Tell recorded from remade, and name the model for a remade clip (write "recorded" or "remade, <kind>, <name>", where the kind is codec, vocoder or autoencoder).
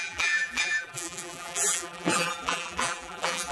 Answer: remade, vocoder, BigVGAN v2